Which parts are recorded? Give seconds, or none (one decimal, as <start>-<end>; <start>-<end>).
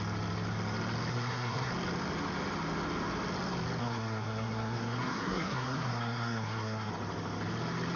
0.0-1.1; 1.7-3.8; 6.9-8.0